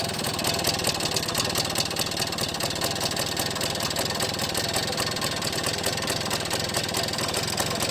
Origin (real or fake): real